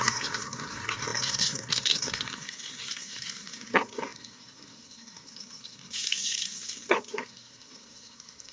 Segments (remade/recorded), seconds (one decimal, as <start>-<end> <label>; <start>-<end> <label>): 0.0-8.5 remade